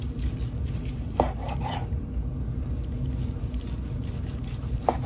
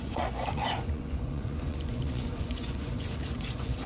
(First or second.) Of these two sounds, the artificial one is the second